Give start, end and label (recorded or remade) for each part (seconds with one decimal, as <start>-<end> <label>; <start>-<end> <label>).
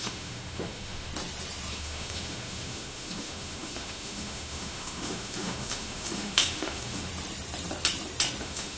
0.0-1.1 remade; 1.1-1.7 recorded; 1.7-7.1 remade; 7.1-8.4 recorded; 8.4-8.8 remade